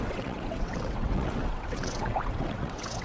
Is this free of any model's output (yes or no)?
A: no